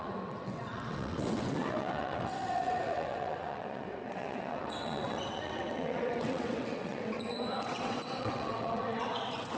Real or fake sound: fake